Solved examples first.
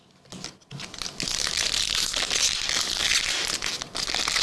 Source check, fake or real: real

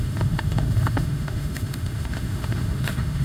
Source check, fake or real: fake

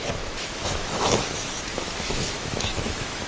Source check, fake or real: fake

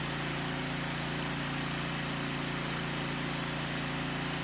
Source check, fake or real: real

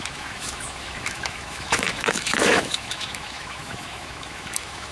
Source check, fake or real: fake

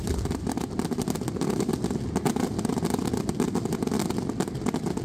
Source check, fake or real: real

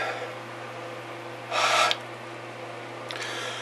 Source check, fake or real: real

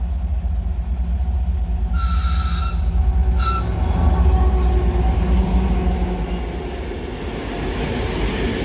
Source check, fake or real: real